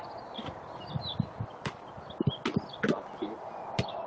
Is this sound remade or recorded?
recorded